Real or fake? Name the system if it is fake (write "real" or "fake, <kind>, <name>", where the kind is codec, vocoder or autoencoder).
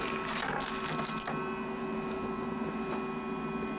real